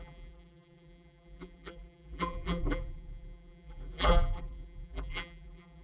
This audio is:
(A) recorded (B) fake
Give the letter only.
B